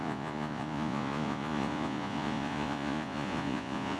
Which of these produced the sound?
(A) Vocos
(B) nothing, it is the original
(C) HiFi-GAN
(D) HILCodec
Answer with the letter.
A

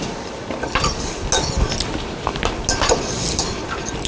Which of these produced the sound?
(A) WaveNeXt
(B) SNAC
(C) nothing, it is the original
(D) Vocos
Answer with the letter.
C